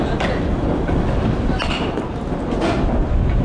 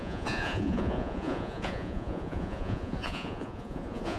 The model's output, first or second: second